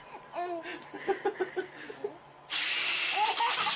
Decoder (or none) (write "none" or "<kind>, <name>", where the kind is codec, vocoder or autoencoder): none